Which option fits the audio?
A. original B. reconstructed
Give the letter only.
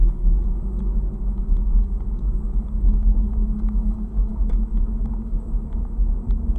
B